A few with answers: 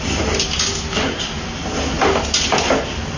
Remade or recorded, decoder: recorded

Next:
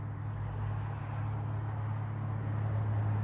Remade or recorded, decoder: recorded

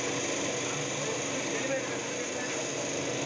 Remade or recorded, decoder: recorded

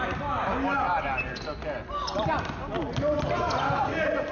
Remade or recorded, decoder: recorded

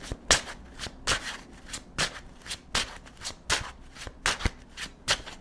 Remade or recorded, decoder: recorded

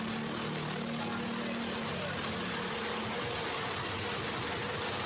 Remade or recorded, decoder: recorded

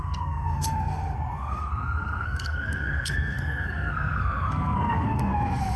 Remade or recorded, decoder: remade, codec, SNAC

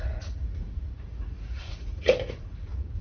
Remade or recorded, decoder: remade, vocoder, Vocos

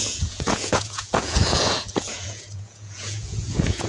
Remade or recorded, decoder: remade, vocoder, Vocos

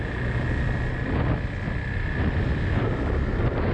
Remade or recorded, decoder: recorded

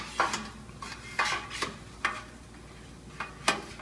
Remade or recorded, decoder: recorded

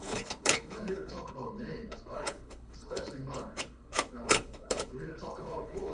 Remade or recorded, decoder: remade, codec, HILCodec